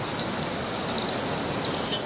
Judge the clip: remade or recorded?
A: recorded